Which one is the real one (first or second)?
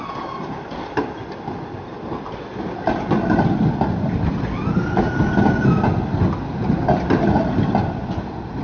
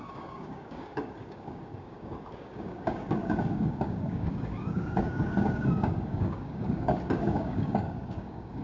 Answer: first